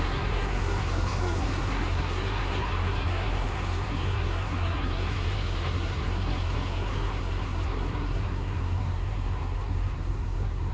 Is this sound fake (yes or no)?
yes